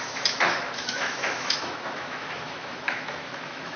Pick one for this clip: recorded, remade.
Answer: remade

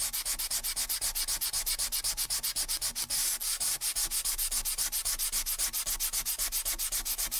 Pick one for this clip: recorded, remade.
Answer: recorded